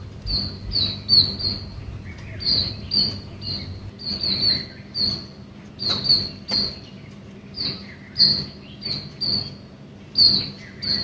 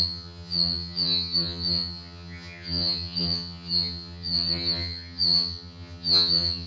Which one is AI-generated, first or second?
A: second